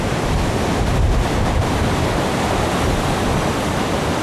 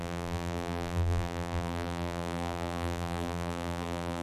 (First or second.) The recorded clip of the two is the first